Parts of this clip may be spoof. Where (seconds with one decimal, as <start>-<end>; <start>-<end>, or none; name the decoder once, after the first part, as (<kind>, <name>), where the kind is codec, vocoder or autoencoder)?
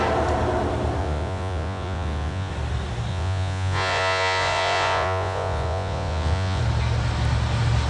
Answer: 1.0-2.5 (vocoder, Vocos); 3.1-6.6